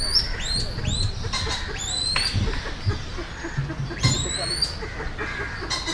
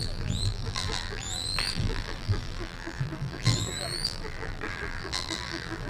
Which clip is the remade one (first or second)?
second